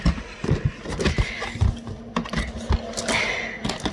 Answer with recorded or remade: recorded